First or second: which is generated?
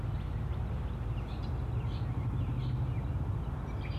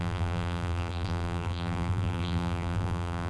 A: second